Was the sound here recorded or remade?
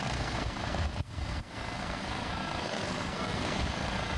remade